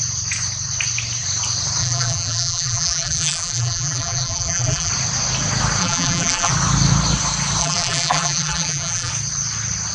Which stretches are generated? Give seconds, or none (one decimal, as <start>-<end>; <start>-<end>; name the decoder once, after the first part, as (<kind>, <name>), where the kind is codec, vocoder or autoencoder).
1.8-4.9 (vocoder, BigVGAN v2); 5.8-6.5; 7.6-9.1